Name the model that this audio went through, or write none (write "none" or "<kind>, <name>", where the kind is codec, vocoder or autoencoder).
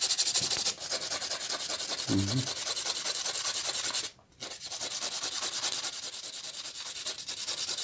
none